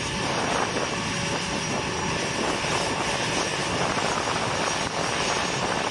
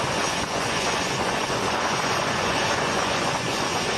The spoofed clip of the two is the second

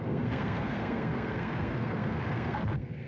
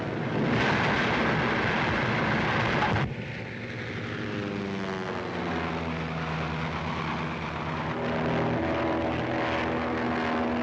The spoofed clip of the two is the first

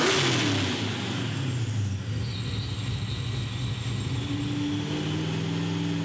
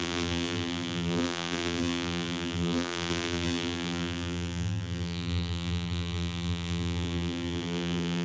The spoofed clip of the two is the second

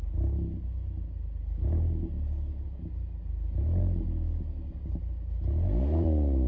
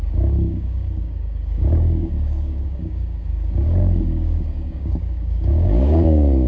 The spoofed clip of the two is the second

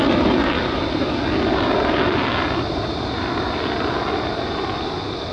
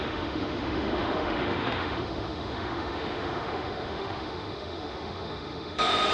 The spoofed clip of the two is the second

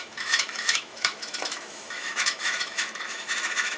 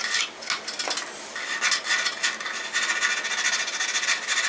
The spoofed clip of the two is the first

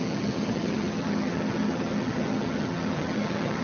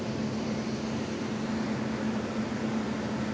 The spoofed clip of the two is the first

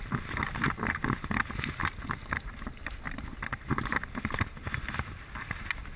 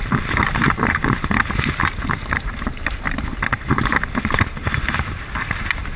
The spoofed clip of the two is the second